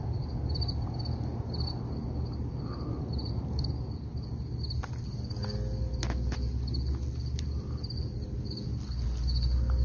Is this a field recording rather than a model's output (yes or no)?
yes